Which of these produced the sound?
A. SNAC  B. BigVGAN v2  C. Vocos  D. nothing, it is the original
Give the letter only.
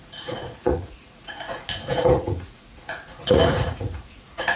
C